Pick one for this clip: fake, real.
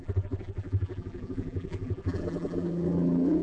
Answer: fake